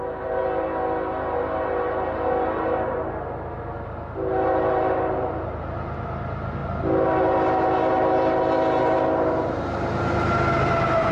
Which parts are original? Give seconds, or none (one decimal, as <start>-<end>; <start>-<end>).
0.0-11.1